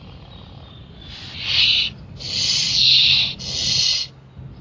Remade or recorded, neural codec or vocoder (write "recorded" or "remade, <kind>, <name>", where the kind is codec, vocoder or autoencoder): recorded